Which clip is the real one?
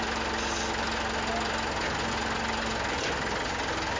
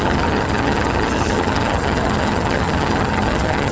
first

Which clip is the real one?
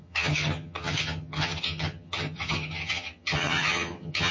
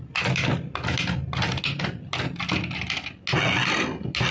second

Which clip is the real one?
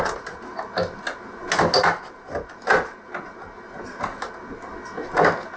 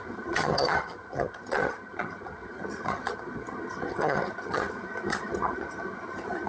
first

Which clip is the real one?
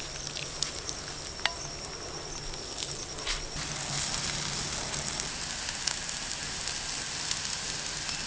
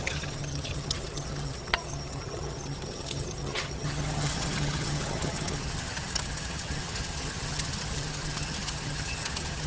first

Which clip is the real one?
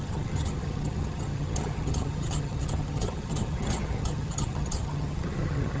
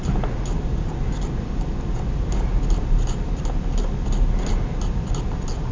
second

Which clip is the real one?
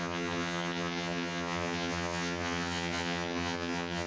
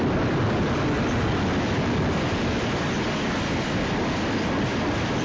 second